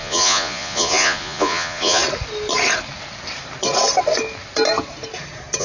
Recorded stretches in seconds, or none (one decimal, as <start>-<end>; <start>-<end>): 2.0-5.6